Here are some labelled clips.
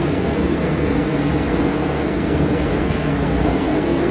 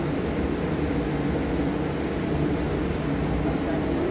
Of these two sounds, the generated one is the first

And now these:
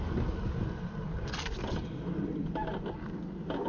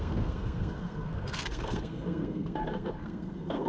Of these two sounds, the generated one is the second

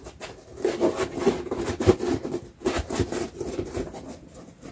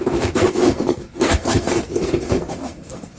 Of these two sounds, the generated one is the second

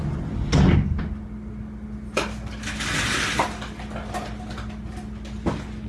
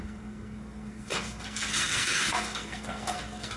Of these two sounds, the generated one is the second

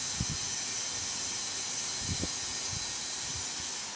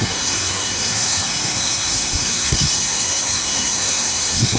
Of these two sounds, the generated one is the second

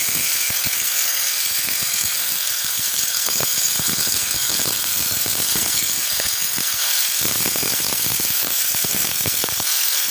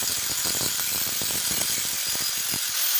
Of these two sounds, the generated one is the first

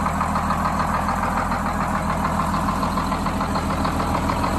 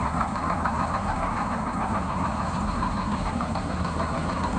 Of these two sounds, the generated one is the second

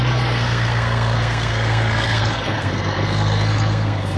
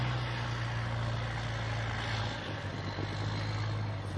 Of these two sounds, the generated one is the first